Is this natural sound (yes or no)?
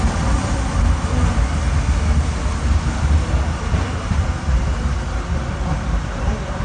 yes